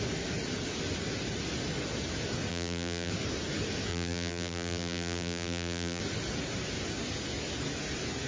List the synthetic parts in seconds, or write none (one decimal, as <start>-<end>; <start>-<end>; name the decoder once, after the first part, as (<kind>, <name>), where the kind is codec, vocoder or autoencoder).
2.5-3.1 (vocoder, BigVGAN v2); 3.9-6.0